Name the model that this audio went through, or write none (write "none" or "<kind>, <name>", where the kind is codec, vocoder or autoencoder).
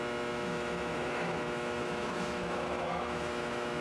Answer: autoencoder, DAC-VAE